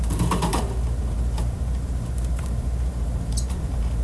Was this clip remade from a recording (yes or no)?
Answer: yes